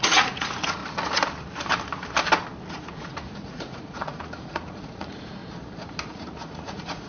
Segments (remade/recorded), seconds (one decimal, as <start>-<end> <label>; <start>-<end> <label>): 0.0-0.8 remade; 0.8-2.7 recorded; 2.7-5.4 remade; 5.4-6.1 recorded; 6.1-7.1 remade